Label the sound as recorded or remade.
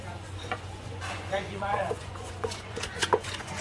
remade